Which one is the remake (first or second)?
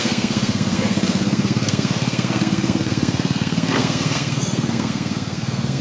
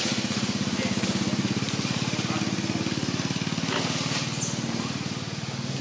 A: first